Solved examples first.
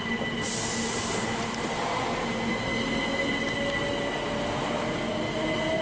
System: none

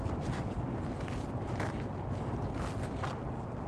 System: none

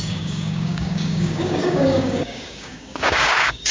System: codec, DAC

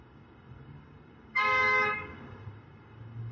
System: codec, DAC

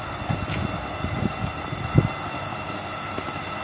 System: none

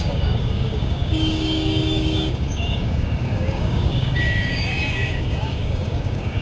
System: codec, DAC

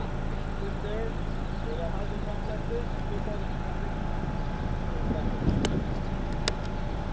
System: none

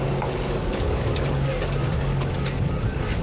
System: codec, DAC